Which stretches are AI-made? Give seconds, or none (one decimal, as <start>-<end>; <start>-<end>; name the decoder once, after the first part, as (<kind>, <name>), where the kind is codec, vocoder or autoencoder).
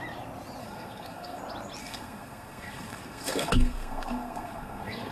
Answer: 0.6-1.4 (codec, SNAC); 1.8-5.1